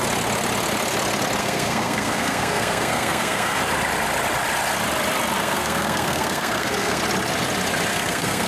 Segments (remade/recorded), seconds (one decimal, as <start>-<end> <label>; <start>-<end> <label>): 0.0-1.4 recorded; 1.4-3.6 remade; 3.6-5.4 recorded; 5.4-7.0 remade; 7.0-7.9 recorded; 7.9-8.5 remade